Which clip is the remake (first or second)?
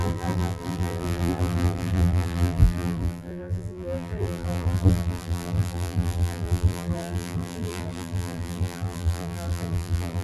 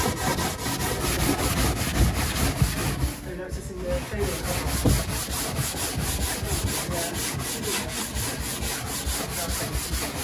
first